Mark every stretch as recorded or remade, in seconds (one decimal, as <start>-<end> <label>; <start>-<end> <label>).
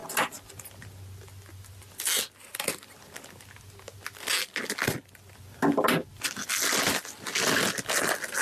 0.0-8.4 recorded